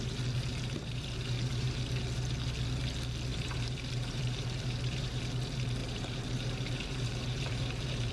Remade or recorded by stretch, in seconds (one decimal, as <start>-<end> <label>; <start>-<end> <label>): 0.0-0.5 recorded; 0.5-1.9 remade; 1.9-3.3 recorded; 3.3-5.2 remade; 5.2-5.8 recorded; 5.8-8.1 remade